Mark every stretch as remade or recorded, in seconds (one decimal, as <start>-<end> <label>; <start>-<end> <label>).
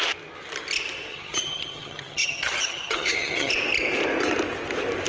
0.0-1.1 recorded; 1.1-3.5 remade; 3.5-5.1 recorded